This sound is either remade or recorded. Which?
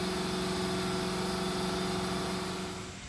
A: recorded